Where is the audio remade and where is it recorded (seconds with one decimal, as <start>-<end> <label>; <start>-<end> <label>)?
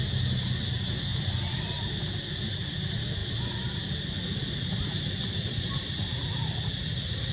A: 0.0-7.3 recorded